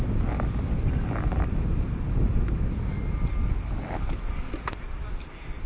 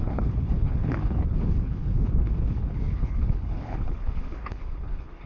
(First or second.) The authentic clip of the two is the first